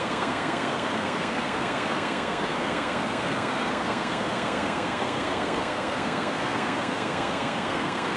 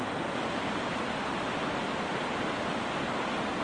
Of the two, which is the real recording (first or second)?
second